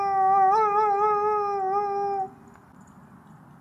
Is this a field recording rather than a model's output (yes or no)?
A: yes